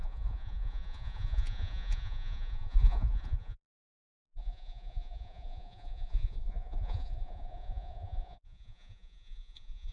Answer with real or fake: fake